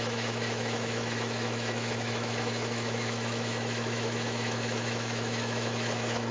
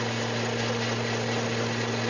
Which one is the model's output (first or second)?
first